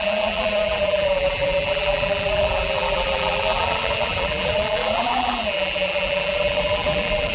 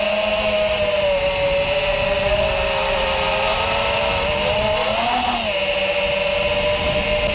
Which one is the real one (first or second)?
second